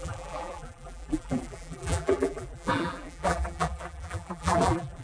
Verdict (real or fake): fake